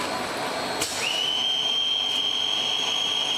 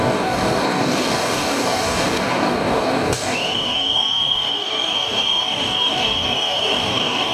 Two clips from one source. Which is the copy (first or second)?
second